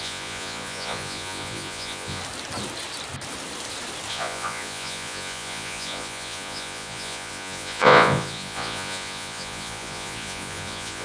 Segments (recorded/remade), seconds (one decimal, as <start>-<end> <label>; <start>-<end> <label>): 0.0-2.2 remade; 2.2-4.1 recorded; 4.1-11.0 remade